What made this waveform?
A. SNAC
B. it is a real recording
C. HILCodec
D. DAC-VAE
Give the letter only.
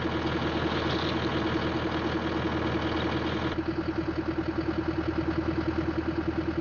B